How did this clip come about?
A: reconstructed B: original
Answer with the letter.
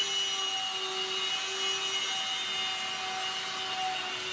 B